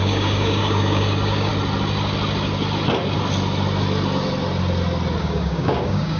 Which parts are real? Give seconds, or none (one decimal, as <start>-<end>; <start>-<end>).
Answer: 1.5-5.2